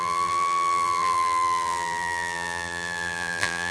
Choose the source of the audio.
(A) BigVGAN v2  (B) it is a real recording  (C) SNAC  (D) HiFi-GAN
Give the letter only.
A